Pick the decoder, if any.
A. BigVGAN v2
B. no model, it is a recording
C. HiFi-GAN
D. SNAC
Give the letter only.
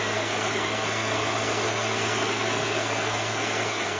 D